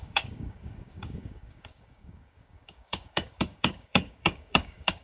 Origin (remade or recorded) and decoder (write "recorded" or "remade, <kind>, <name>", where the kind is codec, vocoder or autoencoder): remade, codec, DAC